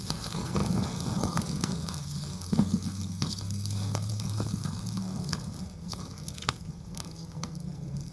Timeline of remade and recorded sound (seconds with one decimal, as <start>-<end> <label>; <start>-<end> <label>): 0.0-8.1 remade

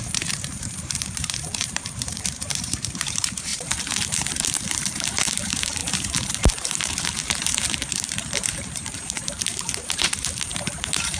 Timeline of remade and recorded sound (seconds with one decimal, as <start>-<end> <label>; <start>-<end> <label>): 0.0-11.2 remade

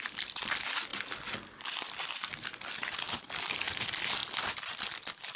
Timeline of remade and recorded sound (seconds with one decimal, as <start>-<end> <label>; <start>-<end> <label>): 0.0-0.9 recorded; 0.9-3.0 remade; 3.0-4.2 recorded; 4.2-5.4 remade